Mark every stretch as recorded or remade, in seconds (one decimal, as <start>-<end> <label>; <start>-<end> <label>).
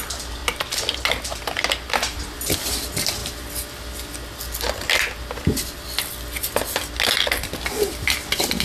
0.0-8.6 recorded